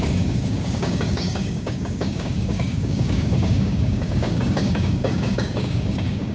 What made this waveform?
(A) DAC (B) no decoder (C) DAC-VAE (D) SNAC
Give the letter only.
A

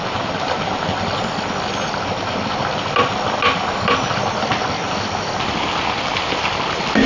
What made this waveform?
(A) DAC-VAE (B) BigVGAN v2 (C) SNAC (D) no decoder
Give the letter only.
D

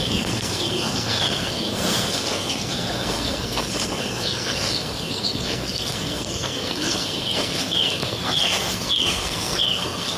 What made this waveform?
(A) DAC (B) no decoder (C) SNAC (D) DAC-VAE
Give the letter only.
C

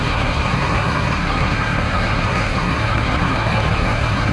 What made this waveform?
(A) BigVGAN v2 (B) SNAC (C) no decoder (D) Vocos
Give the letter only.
B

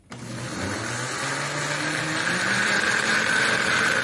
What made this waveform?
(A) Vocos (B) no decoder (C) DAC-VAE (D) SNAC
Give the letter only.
B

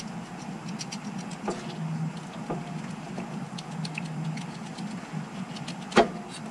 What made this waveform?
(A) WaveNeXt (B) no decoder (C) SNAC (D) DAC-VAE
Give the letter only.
B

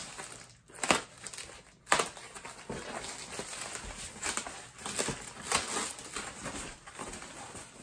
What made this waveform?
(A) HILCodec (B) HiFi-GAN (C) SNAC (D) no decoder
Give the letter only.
D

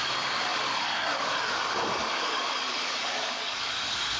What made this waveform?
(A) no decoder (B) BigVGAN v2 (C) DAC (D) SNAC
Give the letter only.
C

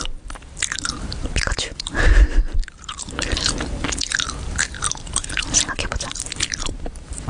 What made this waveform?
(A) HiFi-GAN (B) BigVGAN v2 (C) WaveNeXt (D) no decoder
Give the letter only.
B